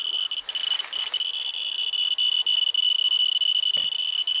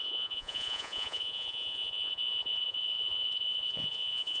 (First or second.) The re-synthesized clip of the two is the second